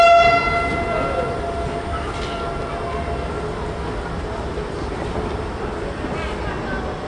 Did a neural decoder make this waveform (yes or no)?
no